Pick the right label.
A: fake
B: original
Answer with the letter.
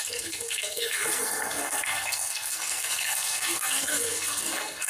A